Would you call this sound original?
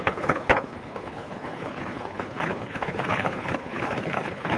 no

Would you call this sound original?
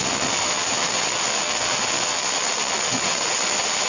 no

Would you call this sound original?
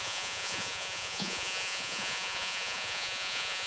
no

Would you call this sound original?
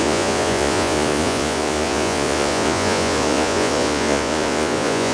no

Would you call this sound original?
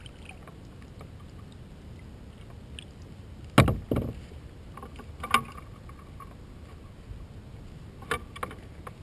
yes